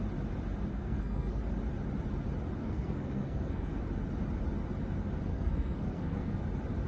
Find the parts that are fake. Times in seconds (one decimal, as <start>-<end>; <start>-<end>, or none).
0.7-1.4; 2.6-3.8; 5.3-6.4